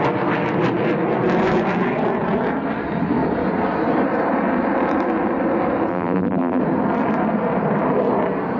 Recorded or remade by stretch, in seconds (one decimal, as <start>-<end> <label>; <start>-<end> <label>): 0.0-5.9 recorded; 5.9-6.6 remade; 6.6-8.6 recorded